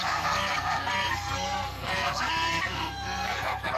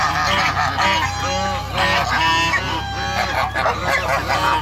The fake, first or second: first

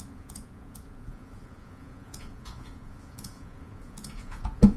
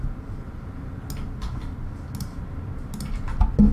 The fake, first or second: first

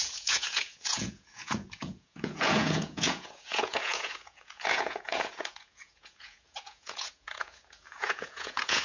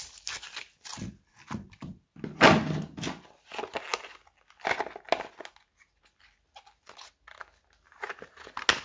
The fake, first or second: first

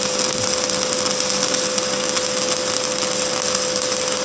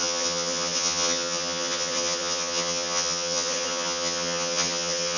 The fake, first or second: second